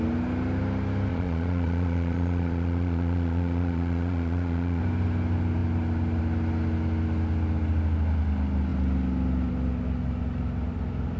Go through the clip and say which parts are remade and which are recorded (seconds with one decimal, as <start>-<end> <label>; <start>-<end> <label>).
0.0-1.1 recorded; 1.1-4.8 remade; 4.8-11.2 recorded